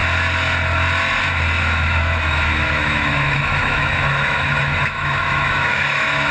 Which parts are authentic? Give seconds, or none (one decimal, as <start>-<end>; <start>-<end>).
0.0-1.6